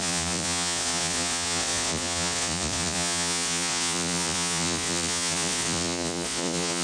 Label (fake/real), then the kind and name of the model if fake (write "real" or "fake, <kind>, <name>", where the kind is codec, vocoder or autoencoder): fake, vocoder, Vocos